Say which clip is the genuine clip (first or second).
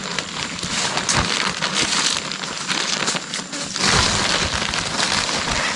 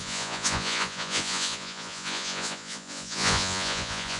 first